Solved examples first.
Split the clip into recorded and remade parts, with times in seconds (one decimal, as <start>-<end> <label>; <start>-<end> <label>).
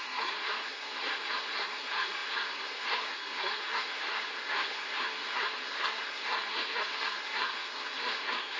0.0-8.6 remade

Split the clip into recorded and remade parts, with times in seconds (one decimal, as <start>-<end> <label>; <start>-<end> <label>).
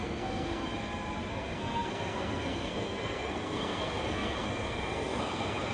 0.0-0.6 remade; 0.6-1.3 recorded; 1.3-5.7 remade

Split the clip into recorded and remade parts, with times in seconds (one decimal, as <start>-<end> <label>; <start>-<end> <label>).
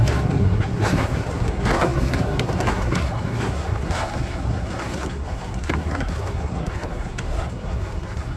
0.0-8.4 remade